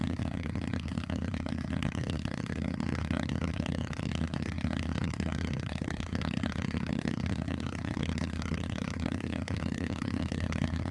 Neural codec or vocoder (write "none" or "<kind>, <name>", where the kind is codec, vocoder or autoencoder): codec, SNAC